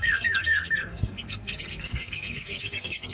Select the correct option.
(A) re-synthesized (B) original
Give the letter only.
A